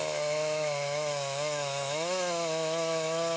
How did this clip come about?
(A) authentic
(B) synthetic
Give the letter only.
B